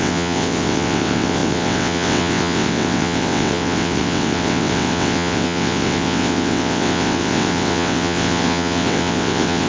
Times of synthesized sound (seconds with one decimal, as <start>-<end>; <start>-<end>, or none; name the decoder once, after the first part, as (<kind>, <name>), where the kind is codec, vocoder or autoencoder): 0.0-9.7 (vocoder, WaveNeXt)